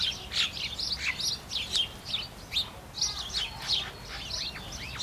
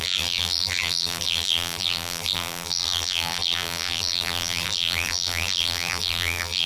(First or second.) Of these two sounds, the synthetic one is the second